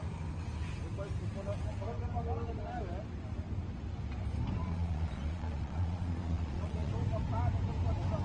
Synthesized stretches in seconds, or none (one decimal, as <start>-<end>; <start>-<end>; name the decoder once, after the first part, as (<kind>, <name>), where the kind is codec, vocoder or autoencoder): 4.6-6.9 (vocoder, Vocos)

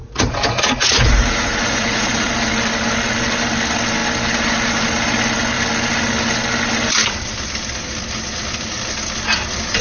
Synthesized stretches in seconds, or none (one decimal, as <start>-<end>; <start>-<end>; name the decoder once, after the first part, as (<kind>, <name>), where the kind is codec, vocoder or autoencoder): 0.0-2.3 (vocoder, Vocos)